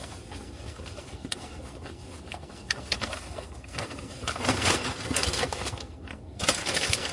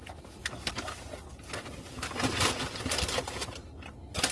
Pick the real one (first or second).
second